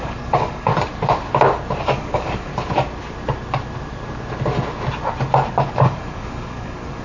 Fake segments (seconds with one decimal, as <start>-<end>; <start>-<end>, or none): 0.0-0.7; 1.8-2.5; 5.7-7.0